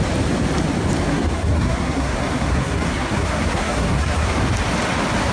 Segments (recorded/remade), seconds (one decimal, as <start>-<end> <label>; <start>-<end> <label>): 0.0-1.1 recorded; 1.1-4.3 remade; 4.3-5.3 recorded